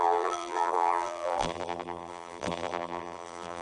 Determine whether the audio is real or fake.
fake